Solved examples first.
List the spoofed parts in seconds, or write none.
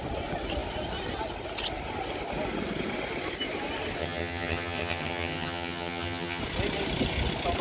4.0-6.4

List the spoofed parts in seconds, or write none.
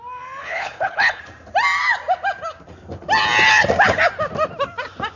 0.4-1.2